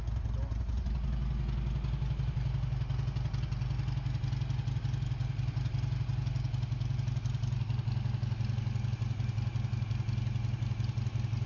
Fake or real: real